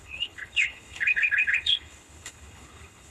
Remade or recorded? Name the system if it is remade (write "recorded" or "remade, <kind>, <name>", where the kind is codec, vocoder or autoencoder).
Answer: remade, codec, HILCodec